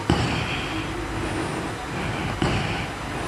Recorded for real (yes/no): yes